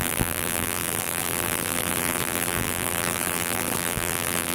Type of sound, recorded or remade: remade